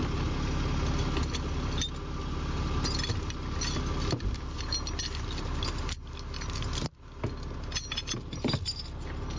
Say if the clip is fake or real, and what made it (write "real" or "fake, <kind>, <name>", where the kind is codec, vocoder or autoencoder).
real